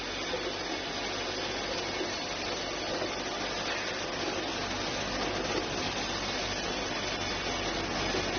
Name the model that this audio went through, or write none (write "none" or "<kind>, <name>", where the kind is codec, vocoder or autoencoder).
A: none